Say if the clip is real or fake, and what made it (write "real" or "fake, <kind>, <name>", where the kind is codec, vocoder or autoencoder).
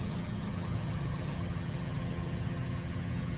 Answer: fake, vocoder, HiFi-GAN